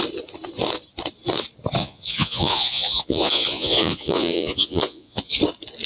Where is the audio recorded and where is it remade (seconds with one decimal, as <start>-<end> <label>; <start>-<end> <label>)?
0.0-1.8 recorded; 1.8-5.3 remade; 5.3-5.9 recorded